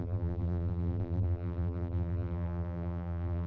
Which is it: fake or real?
fake